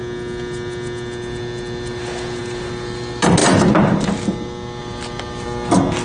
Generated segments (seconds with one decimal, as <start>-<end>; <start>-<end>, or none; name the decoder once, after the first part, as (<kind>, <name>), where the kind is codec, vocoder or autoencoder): none